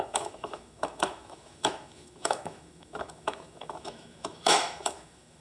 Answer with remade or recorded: remade